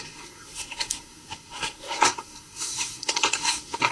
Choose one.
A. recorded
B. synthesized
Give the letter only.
B